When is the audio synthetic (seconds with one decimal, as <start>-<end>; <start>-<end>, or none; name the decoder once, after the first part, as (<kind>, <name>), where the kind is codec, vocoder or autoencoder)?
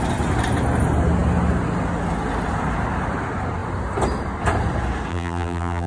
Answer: 5.1-5.9 (vocoder, BigVGAN v2)